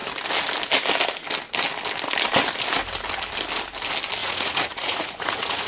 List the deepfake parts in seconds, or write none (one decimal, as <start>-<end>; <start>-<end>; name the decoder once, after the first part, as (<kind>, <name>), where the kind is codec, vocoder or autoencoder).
4.2-5.7 (vocoder, Vocos)